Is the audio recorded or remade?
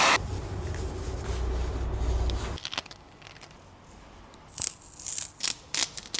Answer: recorded